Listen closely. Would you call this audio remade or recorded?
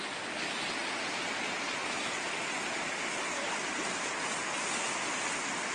recorded